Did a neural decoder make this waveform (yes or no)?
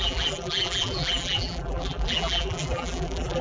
yes